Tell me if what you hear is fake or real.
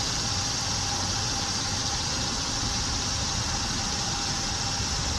real